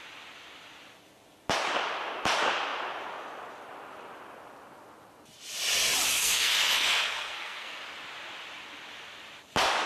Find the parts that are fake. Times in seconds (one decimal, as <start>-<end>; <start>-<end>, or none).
6.1-7.8